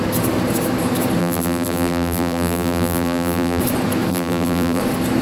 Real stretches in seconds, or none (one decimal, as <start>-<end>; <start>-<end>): 0.0-1.2; 3.6-4.1; 4.8-5.2